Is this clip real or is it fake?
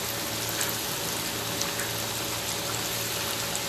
real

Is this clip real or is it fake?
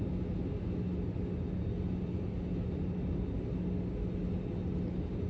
real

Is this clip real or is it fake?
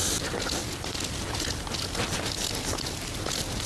real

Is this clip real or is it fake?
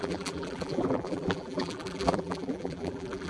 fake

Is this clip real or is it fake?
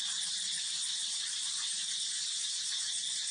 fake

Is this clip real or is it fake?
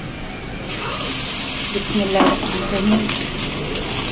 real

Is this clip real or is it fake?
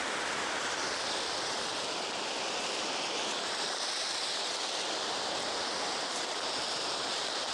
fake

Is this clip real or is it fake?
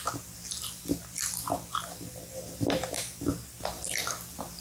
real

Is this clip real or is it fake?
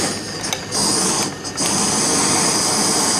real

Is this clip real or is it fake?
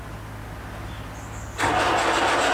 real